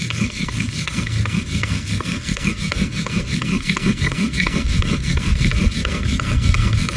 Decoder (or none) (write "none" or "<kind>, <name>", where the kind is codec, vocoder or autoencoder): codec, SNAC